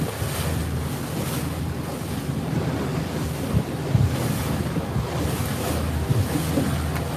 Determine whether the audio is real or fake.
real